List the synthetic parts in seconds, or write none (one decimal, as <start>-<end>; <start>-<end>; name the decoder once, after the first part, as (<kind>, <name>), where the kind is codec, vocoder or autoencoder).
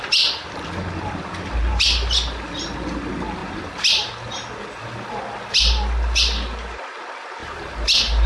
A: none